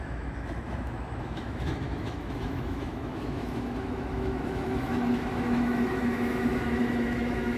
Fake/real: fake